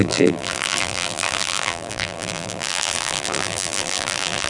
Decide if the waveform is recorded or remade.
remade